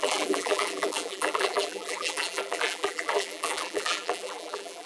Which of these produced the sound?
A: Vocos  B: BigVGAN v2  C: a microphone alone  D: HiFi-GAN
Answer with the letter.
B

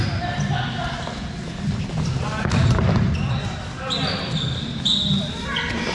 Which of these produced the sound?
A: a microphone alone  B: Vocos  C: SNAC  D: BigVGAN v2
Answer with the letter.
A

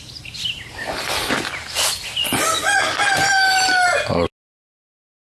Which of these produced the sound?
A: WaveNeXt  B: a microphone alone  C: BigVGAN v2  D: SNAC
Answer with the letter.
B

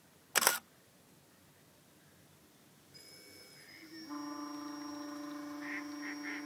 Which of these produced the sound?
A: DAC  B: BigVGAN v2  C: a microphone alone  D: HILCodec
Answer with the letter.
C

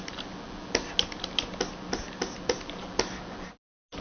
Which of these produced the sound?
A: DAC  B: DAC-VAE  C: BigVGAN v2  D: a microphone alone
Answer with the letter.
D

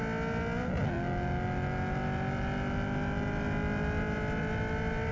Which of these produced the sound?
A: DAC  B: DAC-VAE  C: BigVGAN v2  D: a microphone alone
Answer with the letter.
D